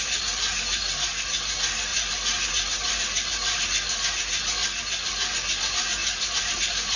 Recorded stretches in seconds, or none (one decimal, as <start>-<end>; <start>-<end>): 0.0-7.0